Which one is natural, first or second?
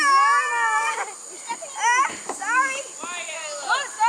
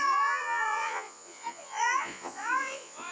first